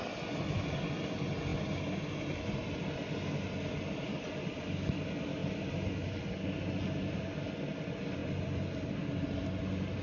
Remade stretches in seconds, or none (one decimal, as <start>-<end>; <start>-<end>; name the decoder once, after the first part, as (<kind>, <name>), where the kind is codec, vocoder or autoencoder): none